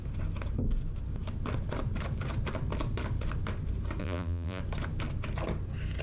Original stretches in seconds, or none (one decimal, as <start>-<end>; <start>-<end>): 0.0-4.0; 4.6-6.0